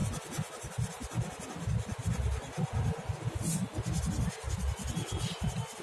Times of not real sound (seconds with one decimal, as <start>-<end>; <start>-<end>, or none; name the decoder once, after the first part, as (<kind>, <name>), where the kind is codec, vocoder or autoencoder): none